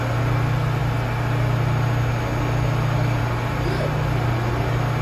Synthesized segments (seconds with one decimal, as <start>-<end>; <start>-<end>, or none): none